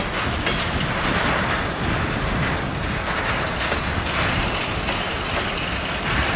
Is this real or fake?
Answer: real